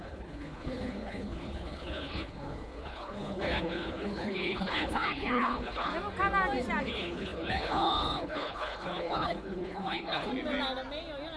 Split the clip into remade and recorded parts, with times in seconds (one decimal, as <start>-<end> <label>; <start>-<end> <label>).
0.0-5.9 remade; 5.9-6.8 recorded; 6.8-10.3 remade; 10.3-11.4 recorded